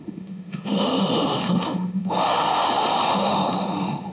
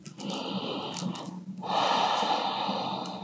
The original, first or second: second